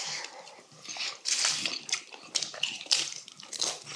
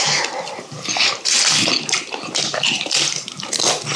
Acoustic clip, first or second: second